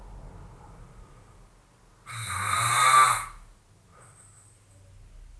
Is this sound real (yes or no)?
yes